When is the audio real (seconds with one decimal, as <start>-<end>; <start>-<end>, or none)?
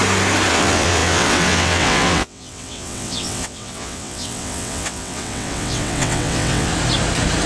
0.0-0.5; 6.7-7.5